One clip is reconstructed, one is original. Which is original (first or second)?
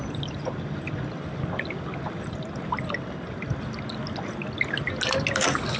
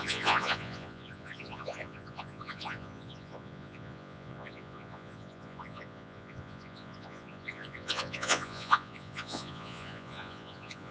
first